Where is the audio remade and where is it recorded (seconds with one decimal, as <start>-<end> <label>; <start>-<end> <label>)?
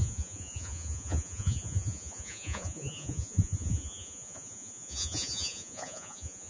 0.0-6.5 remade